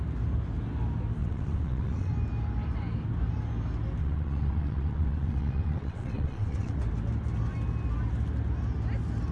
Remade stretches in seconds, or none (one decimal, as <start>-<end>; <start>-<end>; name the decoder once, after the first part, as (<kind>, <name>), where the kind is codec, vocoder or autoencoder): 1.2-2.1 (vocoder, WaveNeXt); 4.0-6.8